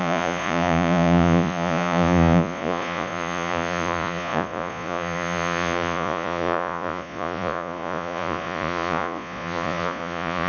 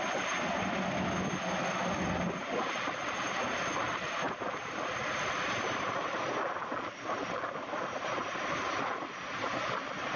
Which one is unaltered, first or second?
second